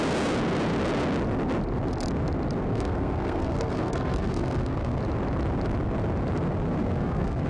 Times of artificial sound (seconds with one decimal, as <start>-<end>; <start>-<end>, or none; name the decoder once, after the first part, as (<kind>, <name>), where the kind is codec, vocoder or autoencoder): 2.7-5.0 (codec, SNAC); 6.8-7.5